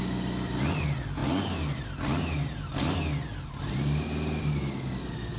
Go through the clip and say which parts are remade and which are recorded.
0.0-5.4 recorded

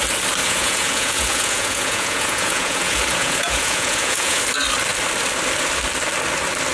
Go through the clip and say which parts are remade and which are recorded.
0.0-0.4 recorded; 0.4-4.4 remade; 4.4-6.7 recorded

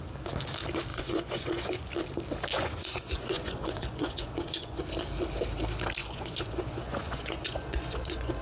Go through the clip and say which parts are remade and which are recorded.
0.0-0.9 recorded; 0.9-1.9 remade; 1.9-2.5 recorded; 2.5-4.8 remade; 4.8-6.0 recorded; 6.0-8.4 remade

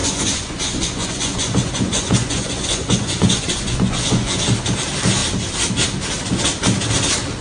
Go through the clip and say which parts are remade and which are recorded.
0.0-4.4 remade; 4.4-7.4 recorded

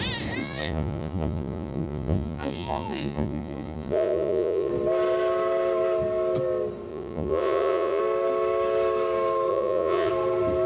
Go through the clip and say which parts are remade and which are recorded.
0.0-0.4 recorded; 0.4-4.7 remade; 4.7-6.9 recorded; 6.9-8.0 remade; 8.0-9.5 recorded; 9.5-10.1 remade; 10.1-10.7 recorded

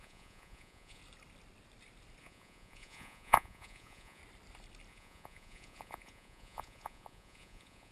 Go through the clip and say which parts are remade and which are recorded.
0.0-1.0 remade; 1.0-2.2 recorded; 2.2-4.2 remade; 4.2-4.9 recorded; 4.9-7.9 remade